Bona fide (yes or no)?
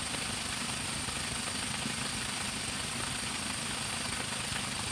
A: yes